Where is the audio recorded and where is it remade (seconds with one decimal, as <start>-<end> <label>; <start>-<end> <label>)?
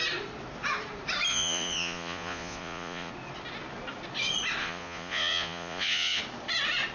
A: 0.0-1.3 recorded; 1.3-3.1 remade; 3.1-4.6 recorded; 4.6-6.2 remade; 6.2-6.9 recorded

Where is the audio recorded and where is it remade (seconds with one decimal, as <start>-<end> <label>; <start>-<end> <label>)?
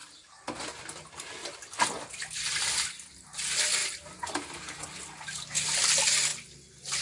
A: 0.0-7.0 recorded